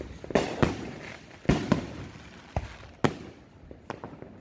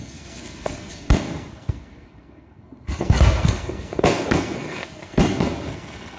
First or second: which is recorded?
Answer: first